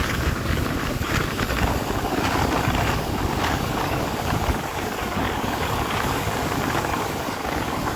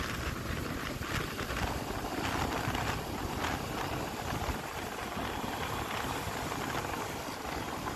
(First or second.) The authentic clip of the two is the second